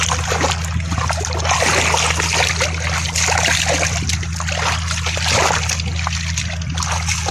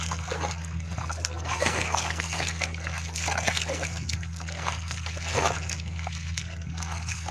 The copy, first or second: second